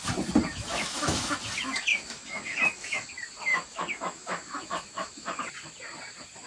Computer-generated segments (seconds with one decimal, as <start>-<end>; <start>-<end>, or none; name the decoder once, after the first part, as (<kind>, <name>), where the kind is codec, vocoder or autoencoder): 0.5-1.3 (autoencoder, DAC-VAE); 1.9-3.1; 3.5-5.4